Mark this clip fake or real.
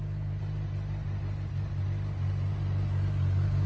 real